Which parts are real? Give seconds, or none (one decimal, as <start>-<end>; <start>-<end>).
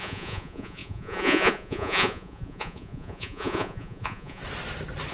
4.4-5.1